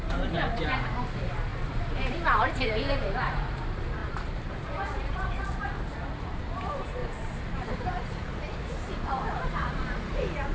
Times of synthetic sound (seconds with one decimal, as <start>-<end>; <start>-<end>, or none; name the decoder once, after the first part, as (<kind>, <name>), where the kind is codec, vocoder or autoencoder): 0.0-7.0 (vocoder, BigVGAN v2); 7.8-10.5